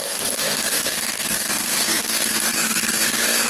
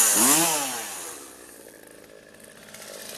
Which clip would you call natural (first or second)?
second